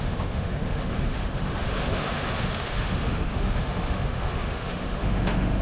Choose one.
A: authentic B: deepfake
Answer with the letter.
B